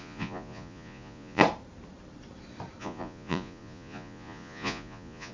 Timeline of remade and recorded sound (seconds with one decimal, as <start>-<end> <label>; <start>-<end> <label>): 0.0-1.4 remade; 1.4-2.8 recorded; 2.8-5.3 remade